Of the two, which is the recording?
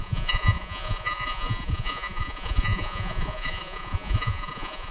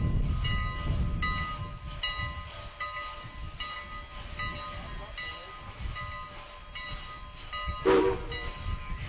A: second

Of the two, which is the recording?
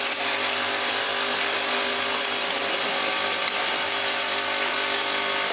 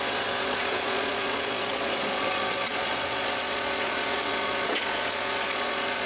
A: first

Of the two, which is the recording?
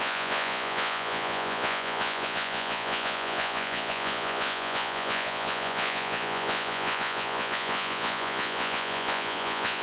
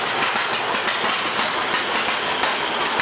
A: second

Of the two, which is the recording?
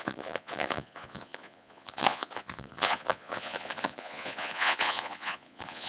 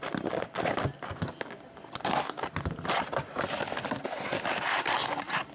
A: second